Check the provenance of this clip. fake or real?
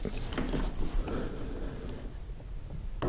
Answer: real